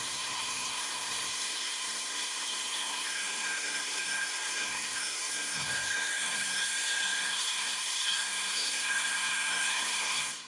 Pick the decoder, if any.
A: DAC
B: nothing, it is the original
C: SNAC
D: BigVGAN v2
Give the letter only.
C